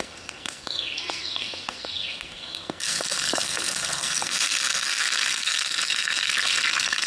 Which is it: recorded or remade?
remade